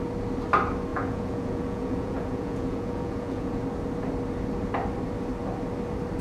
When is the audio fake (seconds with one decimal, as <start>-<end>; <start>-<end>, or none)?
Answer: 0.9-3.6